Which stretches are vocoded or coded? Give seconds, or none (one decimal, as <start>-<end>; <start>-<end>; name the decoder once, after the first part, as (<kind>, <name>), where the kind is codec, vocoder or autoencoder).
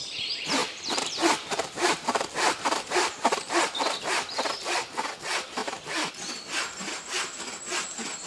0.6-3.7 (vocoder, BigVGAN v2); 5.6-6.1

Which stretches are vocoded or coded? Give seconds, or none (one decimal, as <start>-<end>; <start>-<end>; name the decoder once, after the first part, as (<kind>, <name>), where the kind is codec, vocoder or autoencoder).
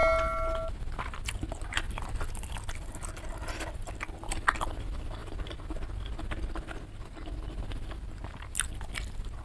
none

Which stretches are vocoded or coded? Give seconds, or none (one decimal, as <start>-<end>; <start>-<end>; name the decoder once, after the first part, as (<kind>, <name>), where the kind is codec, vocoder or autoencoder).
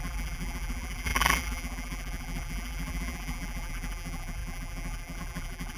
0.0-5.8 (vocoder, BigVGAN v2)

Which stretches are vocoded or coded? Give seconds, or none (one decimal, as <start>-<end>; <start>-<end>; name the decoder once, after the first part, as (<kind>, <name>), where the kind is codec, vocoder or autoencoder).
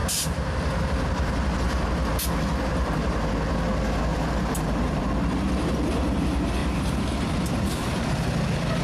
2.7-3.3 (vocoder, BigVGAN v2); 4.1-5.0; 6.6-7.2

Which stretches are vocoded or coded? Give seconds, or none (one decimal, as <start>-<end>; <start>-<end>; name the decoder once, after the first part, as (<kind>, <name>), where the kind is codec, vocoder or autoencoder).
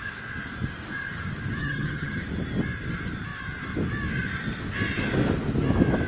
1.6-2.2 (vocoder, HiFi-GAN)